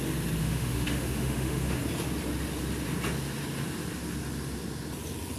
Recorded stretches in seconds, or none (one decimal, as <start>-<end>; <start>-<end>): 0.0-0.4; 1.8-5.4